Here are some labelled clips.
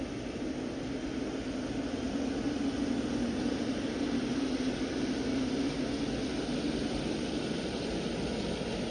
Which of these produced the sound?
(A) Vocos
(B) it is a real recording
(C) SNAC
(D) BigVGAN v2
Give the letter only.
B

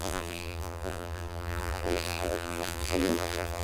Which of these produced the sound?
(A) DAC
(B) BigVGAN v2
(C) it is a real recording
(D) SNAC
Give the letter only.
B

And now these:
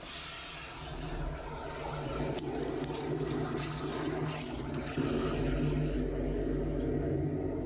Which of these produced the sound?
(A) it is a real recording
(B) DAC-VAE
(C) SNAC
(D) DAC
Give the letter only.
A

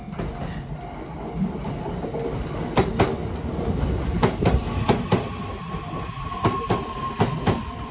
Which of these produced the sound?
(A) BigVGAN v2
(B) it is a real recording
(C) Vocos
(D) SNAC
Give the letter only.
B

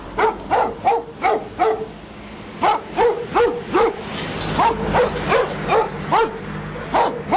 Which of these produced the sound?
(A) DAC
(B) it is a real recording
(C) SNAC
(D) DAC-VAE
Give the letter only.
B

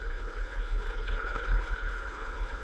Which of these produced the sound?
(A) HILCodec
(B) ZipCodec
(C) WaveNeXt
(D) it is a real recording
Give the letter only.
A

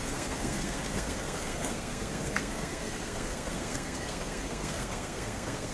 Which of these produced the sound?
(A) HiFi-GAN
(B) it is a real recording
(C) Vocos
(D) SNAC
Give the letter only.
D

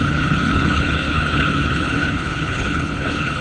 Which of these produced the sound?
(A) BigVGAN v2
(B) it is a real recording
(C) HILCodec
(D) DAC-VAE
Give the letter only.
C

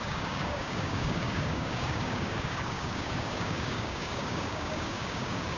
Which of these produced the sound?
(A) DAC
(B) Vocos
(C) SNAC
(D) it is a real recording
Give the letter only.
A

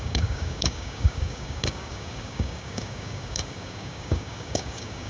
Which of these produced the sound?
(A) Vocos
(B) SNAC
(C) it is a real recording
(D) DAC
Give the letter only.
D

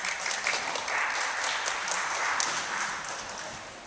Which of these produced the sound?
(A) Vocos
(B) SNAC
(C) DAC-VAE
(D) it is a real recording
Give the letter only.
D